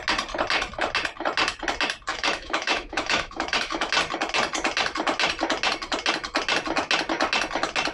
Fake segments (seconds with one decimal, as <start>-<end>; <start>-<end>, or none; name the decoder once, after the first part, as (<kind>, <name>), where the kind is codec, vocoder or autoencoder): 2.1-3.9 (autoencoder, DAC-VAE)